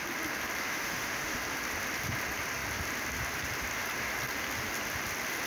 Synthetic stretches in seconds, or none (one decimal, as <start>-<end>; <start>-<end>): 0.7-1.4